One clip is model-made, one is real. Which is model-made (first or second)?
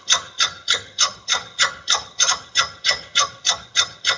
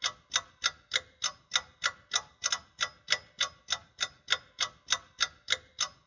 first